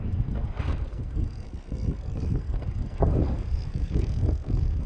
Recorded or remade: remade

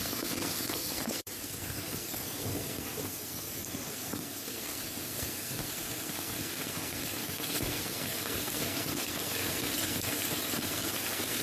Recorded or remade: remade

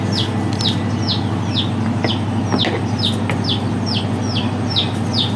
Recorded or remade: recorded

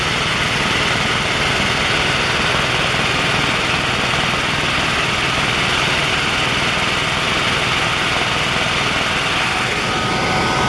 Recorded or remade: recorded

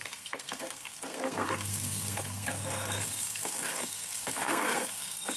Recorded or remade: remade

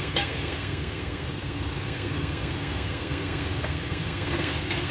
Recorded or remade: remade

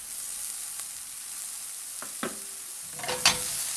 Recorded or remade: recorded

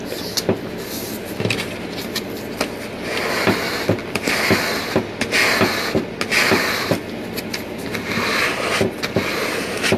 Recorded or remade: recorded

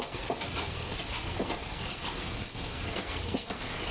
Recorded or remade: remade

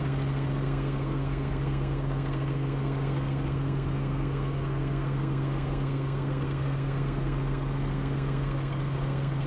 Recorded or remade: remade